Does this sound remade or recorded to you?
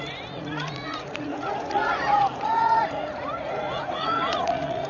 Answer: remade